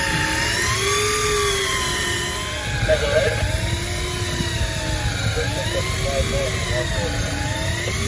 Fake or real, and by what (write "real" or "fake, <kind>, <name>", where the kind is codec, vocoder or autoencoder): real